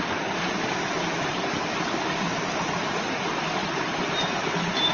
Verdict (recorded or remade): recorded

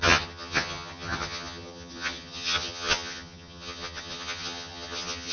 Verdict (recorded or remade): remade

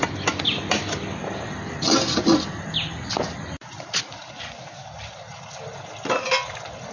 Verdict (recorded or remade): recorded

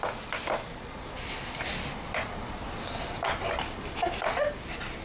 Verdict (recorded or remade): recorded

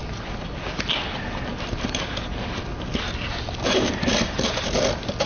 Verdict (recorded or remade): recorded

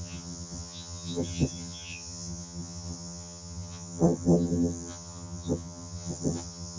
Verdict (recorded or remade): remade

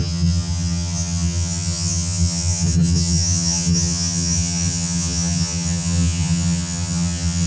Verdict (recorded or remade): remade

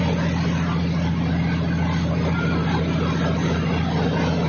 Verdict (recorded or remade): recorded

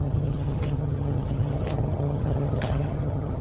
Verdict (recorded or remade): remade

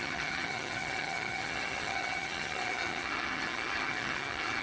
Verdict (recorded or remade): remade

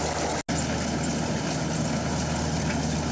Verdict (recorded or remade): recorded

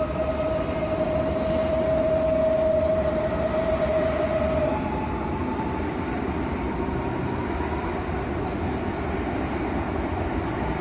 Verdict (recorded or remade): recorded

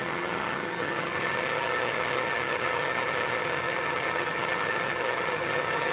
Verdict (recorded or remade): remade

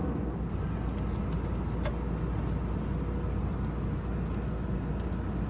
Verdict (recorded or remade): recorded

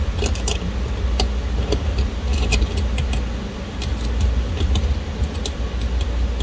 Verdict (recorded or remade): recorded